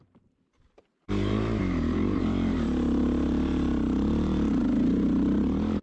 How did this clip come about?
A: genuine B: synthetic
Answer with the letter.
B